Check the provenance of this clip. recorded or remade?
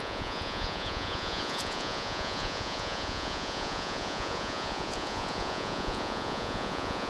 remade